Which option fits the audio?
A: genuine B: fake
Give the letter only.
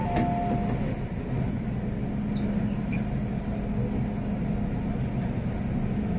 A